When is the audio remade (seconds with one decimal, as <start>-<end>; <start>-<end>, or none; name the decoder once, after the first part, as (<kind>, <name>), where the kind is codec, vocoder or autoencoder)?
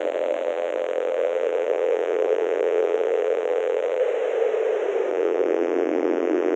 0.0-4.0 (vocoder, BigVGAN v2); 5.1-6.6